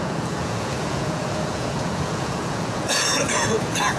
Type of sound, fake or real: fake